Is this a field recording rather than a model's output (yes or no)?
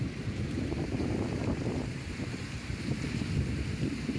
no